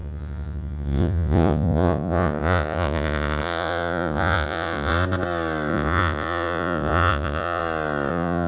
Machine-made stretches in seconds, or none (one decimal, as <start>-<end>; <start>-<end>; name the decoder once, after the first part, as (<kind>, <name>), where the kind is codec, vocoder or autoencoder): 0.0-4.9 (vocoder, Vocos); 5.7-7.6; 8.1-8.5